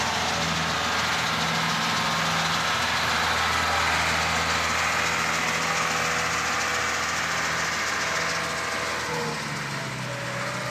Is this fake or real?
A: real